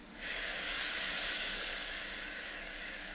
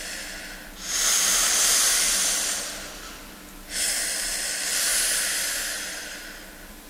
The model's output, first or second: first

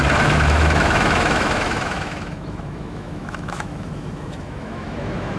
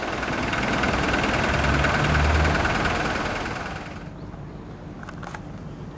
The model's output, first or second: first